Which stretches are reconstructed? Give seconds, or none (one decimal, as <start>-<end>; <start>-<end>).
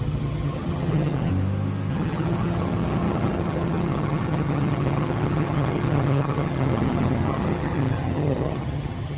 0.0-1.3; 1.9-9.2